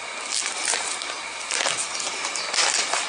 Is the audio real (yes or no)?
yes